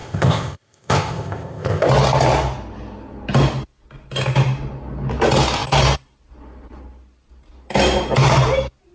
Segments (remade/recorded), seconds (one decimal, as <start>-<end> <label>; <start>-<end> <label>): 0.0-1.9 remade; 1.9-8.9 recorded

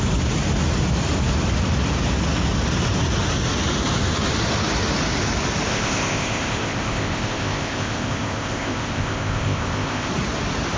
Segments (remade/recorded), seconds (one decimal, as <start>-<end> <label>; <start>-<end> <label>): 0.0-5.7 recorded; 5.7-10.1 remade; 10.1-10.8 recorded